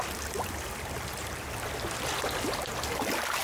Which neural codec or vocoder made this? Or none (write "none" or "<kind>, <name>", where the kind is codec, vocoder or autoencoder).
none